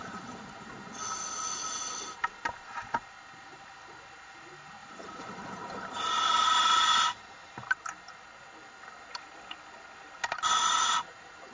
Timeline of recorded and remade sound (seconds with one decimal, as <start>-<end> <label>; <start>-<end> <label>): 0.0-0.7 remade; 0.7-4.8 recorded; 4.8-7.2 remade; 7.2-11.5 recorded